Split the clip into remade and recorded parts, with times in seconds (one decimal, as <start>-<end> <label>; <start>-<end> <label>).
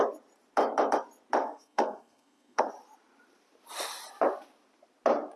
0.0-1.4 recorded; 1.4-2.6 remade; 2.6-5.4 recorded